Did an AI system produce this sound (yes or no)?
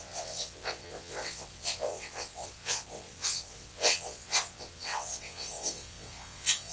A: yes